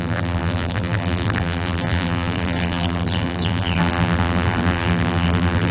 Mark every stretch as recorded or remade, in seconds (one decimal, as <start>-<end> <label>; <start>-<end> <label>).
0.0-5.7 remade